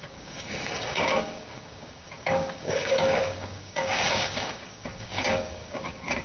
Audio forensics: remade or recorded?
remade